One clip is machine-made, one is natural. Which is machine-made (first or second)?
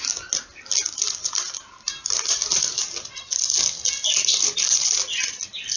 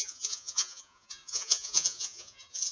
second